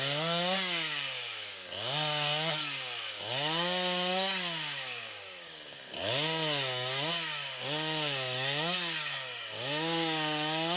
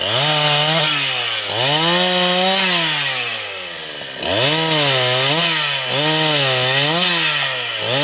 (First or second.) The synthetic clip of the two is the first